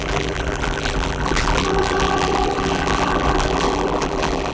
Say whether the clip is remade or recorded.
remade